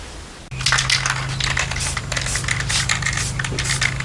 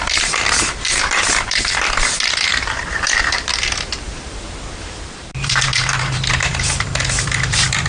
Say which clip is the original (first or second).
first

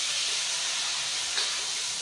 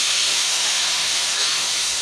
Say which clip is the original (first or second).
first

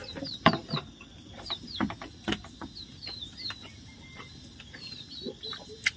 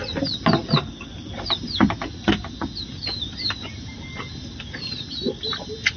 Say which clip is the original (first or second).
second